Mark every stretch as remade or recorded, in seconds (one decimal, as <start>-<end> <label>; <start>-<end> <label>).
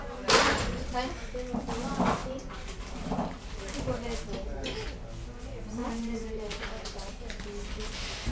0.0-0.4 recorded; 0.4-0.9 remade; 0.9-2.2 recorded; 2.2-3.5 remade; 3.5-5.8 recorded; 5.8-7.1 remade; 7.1-8.3 recorded